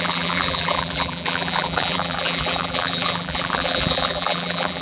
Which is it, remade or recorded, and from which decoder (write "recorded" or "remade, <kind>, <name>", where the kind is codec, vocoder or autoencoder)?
remade, vocoder, BigVGAN v2